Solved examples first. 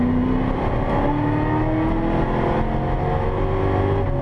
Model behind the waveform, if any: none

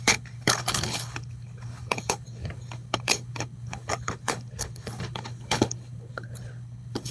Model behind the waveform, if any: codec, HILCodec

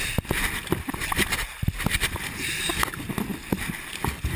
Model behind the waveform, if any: none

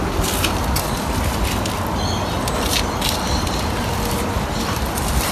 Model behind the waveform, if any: none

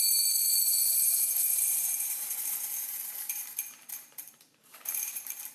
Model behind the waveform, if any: vocoder, BigVGAN v2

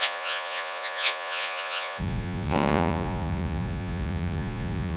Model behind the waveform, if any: vocoder, Vocos